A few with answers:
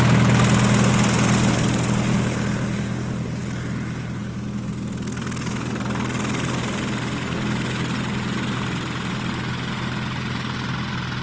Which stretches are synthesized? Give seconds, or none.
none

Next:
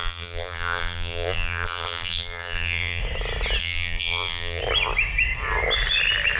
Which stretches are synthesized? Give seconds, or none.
0.0-3.0; 3.6-4.6

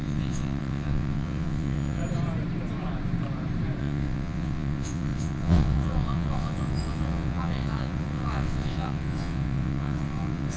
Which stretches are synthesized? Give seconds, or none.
0.0-2.0; 3.8-10.6